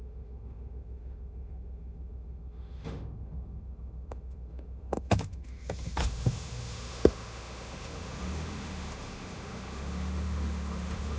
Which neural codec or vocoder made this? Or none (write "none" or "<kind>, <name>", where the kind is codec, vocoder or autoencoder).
autoencoder, DAC-VAE